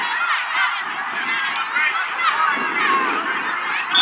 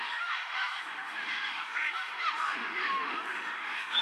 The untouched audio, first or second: first